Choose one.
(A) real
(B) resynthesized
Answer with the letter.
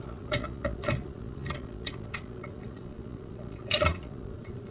B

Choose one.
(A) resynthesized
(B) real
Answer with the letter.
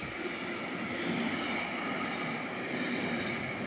B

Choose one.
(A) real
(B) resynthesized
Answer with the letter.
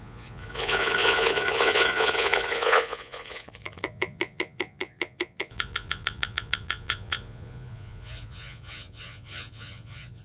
B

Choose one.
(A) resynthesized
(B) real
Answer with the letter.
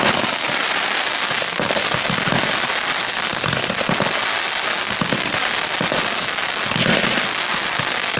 B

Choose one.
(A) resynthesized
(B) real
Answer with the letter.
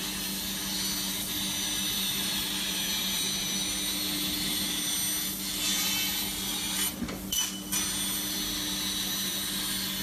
B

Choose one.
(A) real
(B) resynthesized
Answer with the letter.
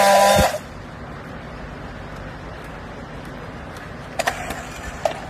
A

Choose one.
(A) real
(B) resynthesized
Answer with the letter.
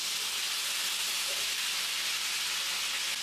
A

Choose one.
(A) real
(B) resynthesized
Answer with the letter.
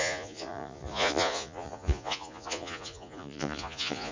B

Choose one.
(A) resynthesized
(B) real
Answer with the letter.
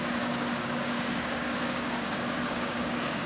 A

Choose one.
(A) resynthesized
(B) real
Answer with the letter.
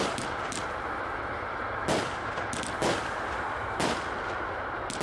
B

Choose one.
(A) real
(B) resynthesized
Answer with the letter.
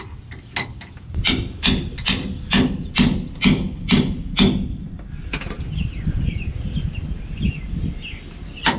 A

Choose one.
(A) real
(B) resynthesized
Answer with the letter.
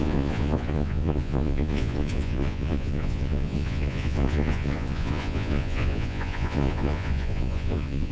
B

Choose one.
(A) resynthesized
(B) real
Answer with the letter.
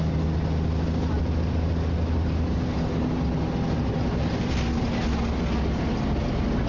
B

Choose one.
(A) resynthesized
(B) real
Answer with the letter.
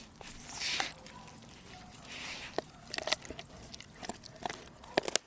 B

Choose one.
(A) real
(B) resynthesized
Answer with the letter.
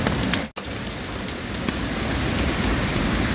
A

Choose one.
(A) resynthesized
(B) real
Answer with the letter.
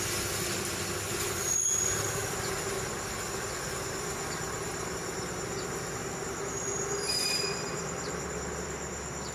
B